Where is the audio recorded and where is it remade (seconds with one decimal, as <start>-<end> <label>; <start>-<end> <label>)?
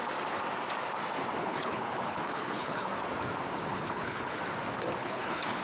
0.0-1.4 recorded; 1.4-2.9 remade; 2.9-3.7 recorded; 3.7-4.4 remade; 4.4-5.0 recorded; 5.0-5.6 remade